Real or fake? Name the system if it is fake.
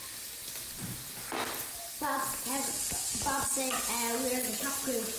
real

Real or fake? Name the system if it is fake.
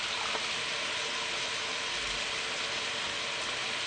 real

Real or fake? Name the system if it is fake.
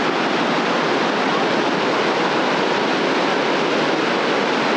real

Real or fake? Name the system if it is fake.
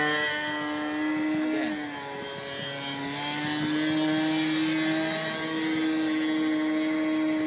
real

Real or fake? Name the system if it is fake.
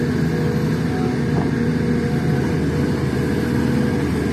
real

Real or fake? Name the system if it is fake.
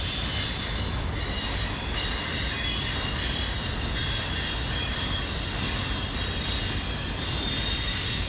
real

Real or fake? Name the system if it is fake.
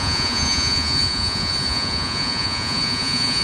fake, vocoder, Vocos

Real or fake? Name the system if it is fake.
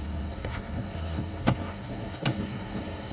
fake, codec, SNAC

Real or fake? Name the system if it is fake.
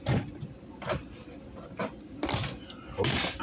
real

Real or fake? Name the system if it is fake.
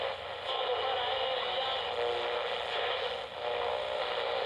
real